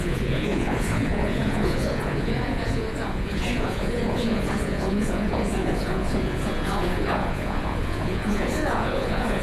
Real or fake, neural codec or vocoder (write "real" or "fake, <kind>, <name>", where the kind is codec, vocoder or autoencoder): fake, vocoder, Vocos